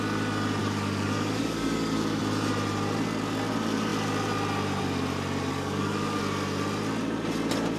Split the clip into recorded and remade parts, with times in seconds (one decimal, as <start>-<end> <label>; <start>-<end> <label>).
0.0-0.6 recorded; 0.6-2.2 remade; 2.2-5.5 recorded; 5.5-6.2 remade; 6.2-7.8 recorded